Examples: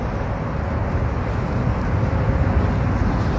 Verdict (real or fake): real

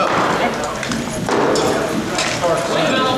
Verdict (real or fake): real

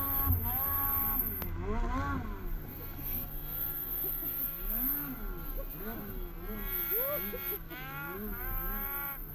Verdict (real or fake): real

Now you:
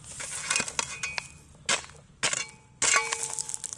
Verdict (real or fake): real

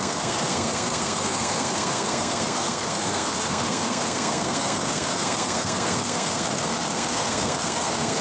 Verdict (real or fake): fake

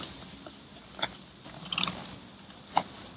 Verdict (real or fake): real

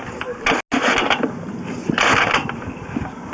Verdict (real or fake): real